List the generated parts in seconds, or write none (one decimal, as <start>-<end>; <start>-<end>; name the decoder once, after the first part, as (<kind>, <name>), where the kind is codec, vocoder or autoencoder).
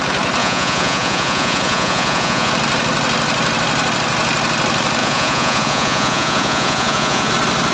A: 0.4-2.5 (vocoder, Vocos); 5.0-7.3